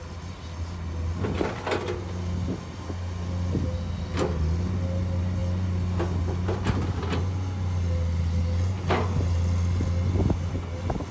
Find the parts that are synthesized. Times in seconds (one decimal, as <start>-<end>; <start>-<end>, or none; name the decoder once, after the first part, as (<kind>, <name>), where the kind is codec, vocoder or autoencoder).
none